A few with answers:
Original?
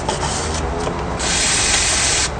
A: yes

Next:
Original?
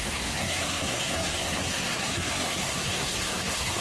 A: no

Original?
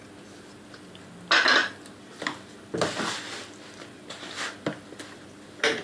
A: yes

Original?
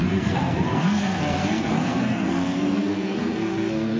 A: no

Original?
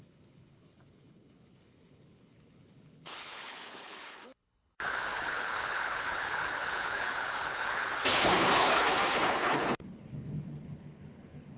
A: no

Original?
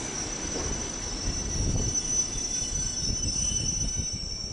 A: yes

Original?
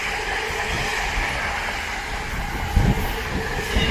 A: yes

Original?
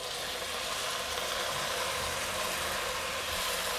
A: yes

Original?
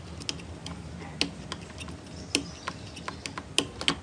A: yes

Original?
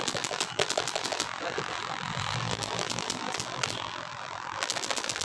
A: no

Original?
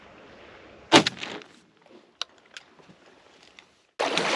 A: yes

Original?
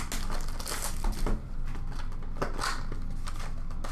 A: yes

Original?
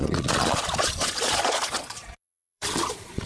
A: no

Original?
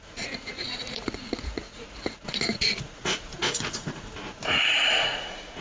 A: no